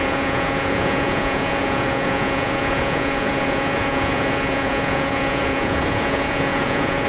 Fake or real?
fake